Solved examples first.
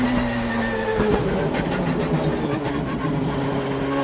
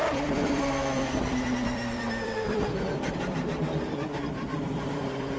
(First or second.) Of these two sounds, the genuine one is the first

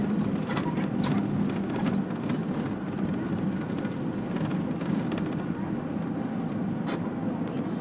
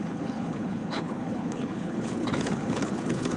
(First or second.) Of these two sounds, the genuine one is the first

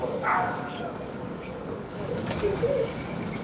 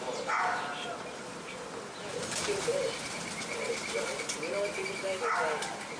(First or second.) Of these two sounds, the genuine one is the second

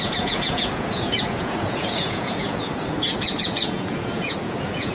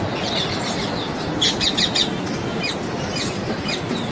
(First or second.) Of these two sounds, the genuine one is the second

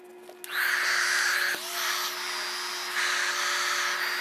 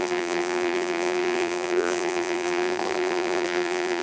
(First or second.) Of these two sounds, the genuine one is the first